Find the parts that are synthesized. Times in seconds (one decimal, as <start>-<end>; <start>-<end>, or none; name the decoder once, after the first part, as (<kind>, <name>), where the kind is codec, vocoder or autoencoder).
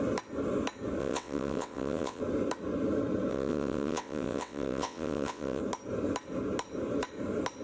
1.0-2.2 (vocoder, WaveNeXt); 3.3-5.6